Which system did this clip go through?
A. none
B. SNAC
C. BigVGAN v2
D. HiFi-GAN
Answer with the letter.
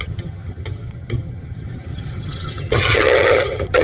D